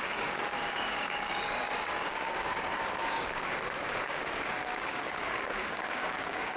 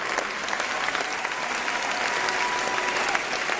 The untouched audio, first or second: second